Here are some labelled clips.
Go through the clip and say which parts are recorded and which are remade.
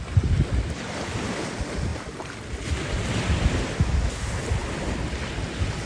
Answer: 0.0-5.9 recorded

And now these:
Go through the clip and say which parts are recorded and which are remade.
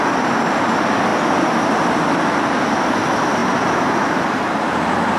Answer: 0.0-1.1 recorded; 1.1-2.4 remade; 2.4-5.2 recorded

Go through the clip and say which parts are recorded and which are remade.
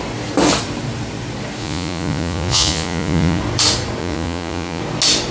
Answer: 0.0-1.6 recorded; 1.6-3.4 remade; 3.4-4.0 recorded; 4.0-4.8 remade; 4.8-5.3 recorded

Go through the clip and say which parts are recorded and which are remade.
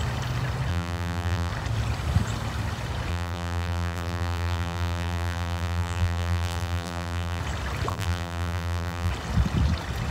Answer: 0.0-0.7 recorded; 0.7-1.5 remade; 1.5-3.1 recorded; 3.1-7.4 remade; 7.4-7.9 recorded; 7.9-9.1 remade; 9.1-10.1 recorded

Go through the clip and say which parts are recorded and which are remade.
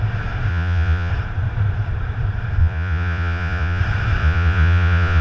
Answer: 0.0-0.5 recorded; 0.5-1.1 remade; 1.1-2.6 recorded; 2.6-3.8 remade; 3.8-4.2 recorded; 4.2-5.2 remade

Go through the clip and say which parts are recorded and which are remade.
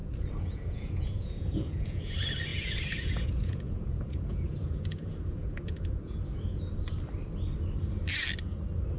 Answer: 0.0-2.0 remade; 2.0-2.5 recorded; 2.5-6.6 remade; 6.6-9.0 recorded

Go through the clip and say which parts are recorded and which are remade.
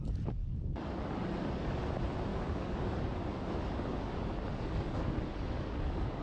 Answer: 0.0-0.4 recorded; 0.4-1.8 remade; 1.8-2.3 recorded; 2.3-6.2 remade